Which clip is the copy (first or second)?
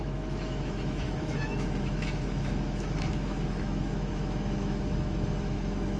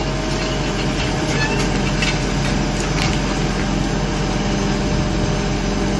first